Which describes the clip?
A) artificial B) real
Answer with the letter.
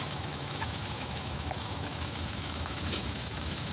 A